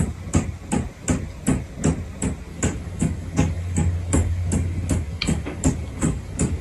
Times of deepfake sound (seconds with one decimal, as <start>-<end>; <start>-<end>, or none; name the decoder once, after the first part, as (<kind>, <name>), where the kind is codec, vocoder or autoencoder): 2.5-6.6 (codec, DAC)